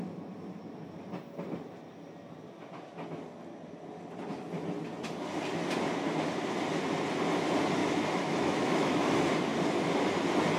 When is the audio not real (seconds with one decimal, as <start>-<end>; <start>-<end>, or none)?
7.8-9.3